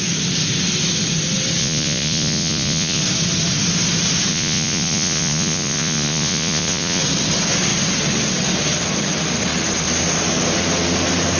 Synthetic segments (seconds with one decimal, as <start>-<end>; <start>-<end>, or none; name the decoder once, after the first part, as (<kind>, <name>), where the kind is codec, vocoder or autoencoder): 1.6-3.0 (vocoder, Vocos); 4.3-7.0